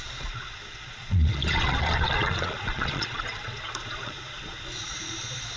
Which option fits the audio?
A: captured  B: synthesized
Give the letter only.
B